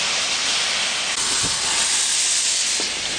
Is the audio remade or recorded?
recorded